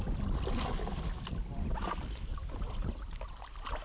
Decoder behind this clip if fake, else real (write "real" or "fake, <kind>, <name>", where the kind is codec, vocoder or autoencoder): real